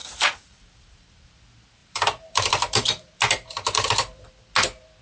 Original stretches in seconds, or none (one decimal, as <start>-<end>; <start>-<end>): 1.3-1.8; 4.3-5.0